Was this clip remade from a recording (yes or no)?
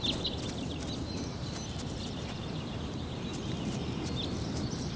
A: no